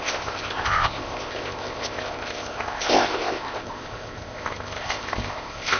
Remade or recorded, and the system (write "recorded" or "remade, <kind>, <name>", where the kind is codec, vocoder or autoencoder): remade, codec, ZipCodec